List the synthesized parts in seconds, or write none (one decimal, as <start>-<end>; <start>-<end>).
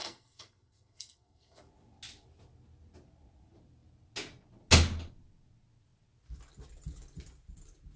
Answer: 0.0-1.6